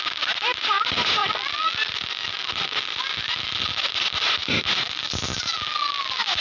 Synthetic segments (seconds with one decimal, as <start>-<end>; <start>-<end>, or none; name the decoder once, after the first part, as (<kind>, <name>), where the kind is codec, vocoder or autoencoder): none